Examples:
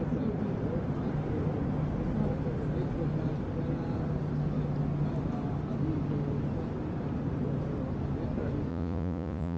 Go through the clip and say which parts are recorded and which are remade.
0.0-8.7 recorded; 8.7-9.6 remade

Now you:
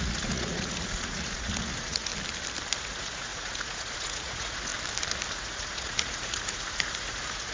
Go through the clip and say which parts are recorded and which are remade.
0.0-2.1 remade; 2.1-2.8 recorded; 2.8-4.7 remade; 4.7-5.3 recorded; 5.3-7.5 remade

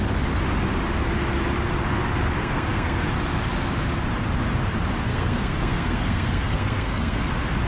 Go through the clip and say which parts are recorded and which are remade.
0.0-2.4 recorded; 2.4-3.1 remade; 3.1-5.1 recorded; 5.1-7.3 remade; 7.3-7.7 recorded